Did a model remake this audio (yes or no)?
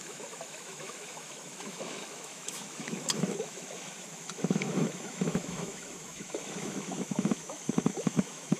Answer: yes